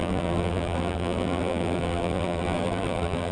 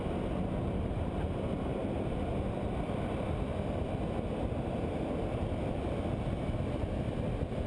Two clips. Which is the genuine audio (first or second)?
second